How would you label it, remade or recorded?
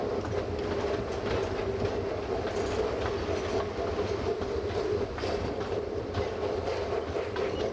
recorded